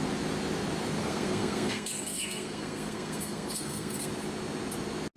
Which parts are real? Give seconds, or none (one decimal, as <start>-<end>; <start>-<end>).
0.0-1.0; 4.1-5.2

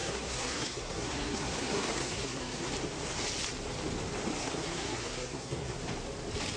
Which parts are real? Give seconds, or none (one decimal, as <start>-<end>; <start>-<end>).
2.7-4.4; 5.8-6.6

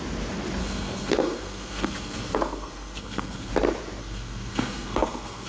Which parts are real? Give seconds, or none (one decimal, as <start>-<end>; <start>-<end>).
0.0-0.6; 3.5-4.0

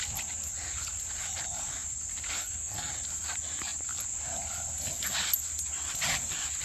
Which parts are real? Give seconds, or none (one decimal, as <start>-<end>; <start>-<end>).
0.0-2.4; 2.9-6.6